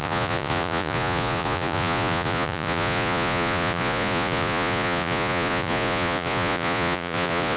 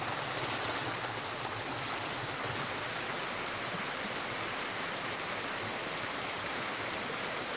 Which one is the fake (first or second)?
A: first